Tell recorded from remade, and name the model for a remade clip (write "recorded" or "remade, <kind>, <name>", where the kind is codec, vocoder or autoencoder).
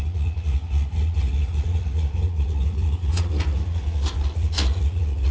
remade, vocoder, Vocos